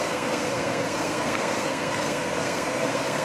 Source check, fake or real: fake